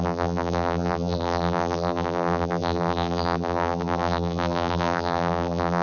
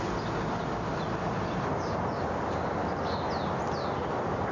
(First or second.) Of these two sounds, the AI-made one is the first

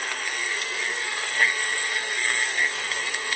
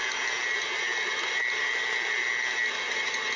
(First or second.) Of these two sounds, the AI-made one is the first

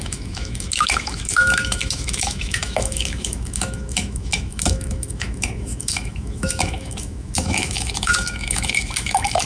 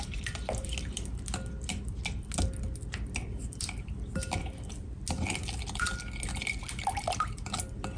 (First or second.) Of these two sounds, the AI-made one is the first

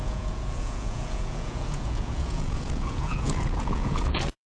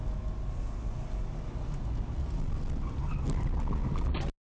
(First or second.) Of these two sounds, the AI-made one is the first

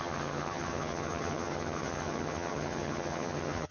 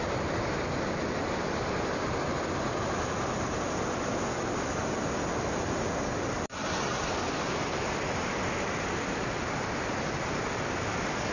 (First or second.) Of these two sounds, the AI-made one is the first